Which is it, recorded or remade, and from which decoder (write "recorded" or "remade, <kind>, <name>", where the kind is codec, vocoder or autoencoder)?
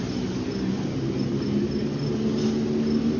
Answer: recorded